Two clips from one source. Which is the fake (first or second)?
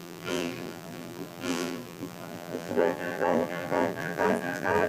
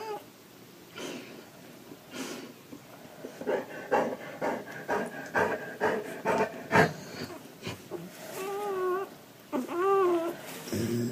first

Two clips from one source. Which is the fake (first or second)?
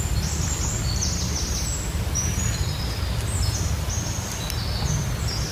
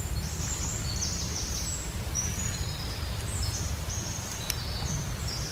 second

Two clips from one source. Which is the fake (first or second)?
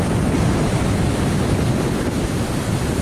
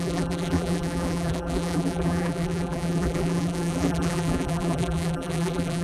second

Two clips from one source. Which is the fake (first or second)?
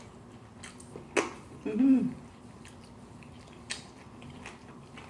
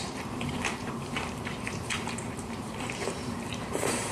second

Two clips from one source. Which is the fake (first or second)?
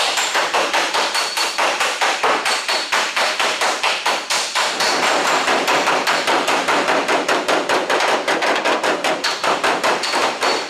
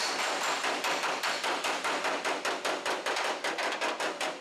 first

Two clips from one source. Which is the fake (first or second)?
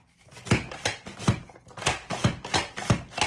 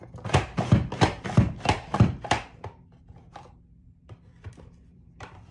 second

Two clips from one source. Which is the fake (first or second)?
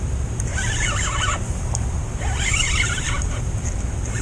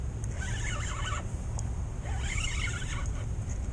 first